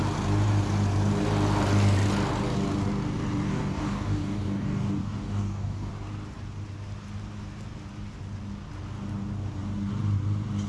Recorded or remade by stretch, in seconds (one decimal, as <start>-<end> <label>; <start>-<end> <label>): 0.0-3.5 recorded; 3.5-5.9 remade; 5.9-10.7 recorded